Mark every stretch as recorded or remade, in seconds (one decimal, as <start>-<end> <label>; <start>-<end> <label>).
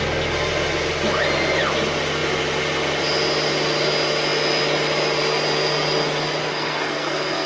0.0-6.4 recorded; 6.4-7.5 remade